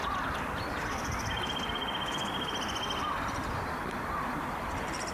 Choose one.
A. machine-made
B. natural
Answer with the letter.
B